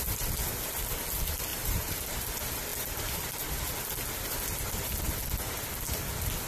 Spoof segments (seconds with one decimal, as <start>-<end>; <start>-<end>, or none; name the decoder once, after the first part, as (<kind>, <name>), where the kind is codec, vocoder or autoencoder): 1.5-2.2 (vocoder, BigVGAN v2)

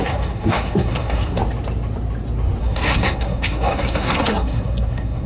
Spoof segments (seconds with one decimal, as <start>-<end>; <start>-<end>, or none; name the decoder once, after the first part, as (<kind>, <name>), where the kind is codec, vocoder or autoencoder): 0.0-1.4 (codec, SNAC); 2.6-5.3

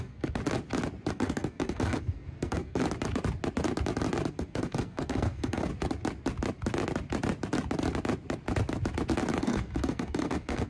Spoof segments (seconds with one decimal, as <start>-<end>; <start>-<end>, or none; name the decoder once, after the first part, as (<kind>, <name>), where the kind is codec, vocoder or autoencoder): 0.0-0.4 (codec, SNAC); 1.1-2.8; 4.3-5.7; 9.4-10.7

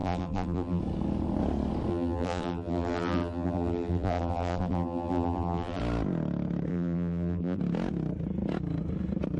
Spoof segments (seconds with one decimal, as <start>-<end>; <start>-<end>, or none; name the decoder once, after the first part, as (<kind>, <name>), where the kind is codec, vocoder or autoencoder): 0.0-0.8 (vocoder, BigVGAN v2); 1.9-5.8; 6.7-7.6

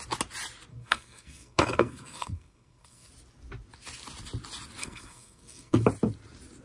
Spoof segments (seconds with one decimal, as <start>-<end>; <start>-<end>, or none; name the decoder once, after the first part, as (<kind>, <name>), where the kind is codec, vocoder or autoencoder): 0.7-3.1 (codec, SNAC); 4.8-5.8